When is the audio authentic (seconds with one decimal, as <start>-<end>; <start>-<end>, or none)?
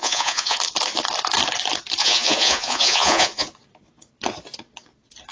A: 0.6-2.0; 3.5-5.3